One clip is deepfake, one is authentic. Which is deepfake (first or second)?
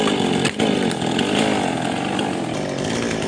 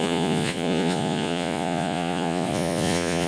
second